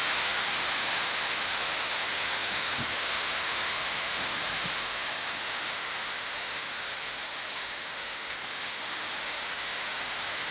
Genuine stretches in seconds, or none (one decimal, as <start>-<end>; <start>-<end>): none